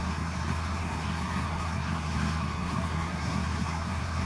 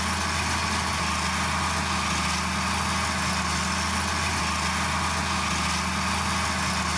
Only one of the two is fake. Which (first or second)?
first